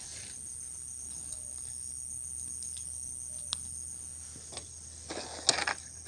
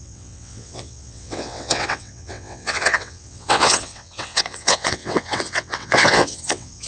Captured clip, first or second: first